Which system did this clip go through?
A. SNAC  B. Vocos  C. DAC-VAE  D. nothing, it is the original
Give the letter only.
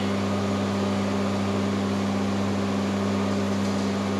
D